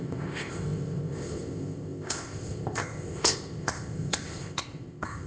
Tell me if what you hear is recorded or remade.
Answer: remade